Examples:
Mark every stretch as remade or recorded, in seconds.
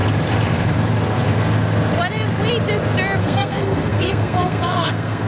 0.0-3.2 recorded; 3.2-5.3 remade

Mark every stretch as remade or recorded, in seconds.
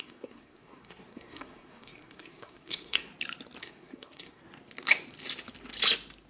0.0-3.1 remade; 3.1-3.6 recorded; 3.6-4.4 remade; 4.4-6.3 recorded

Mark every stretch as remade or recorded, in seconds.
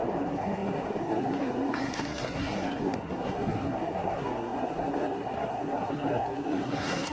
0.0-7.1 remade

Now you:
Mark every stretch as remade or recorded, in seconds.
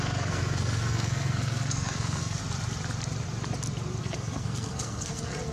0.0-2.4 remade; 2.4-4.0 recorded; 4.0-5.5 remade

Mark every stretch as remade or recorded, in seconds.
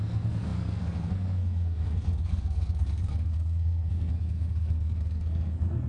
0.0-5.9 remade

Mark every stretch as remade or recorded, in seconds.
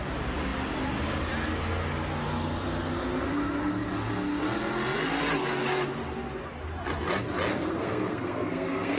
0.0-7.5 recorded; 7.5-9.0 remade